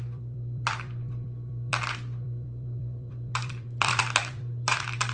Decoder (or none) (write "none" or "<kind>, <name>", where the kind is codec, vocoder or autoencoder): vocoder, BigVGAN v2